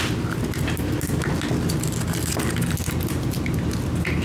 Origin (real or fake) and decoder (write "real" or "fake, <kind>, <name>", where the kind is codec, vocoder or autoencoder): real